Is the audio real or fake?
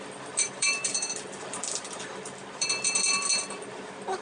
fake